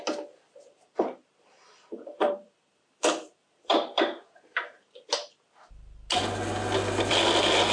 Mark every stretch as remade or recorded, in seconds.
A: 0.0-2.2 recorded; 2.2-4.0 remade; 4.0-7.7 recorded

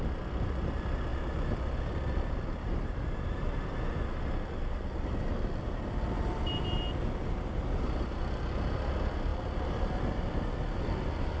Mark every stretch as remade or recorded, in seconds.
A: 0.0-11.4 recorded

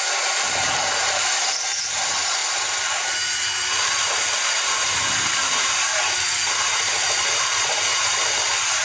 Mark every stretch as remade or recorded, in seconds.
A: 0.0-8.8 remade

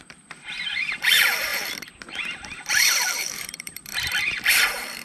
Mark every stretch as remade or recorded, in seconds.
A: 0.0-3.9 remade; 3.9-4.5 recorded; 4.5-5.0 remade

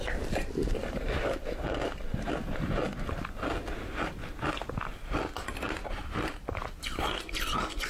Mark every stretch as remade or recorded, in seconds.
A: 0.0-0.8 recorded; 0.8-3.1 remade; 3.1-7.9 recorded